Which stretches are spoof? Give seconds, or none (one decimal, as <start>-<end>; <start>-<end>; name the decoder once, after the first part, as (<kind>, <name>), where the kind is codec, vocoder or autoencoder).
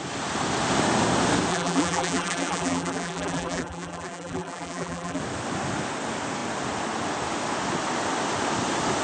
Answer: 1.5-5.2 (vocoder, BigVGAN v2)